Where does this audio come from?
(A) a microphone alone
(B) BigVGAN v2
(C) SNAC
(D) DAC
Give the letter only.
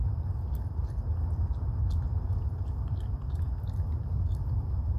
A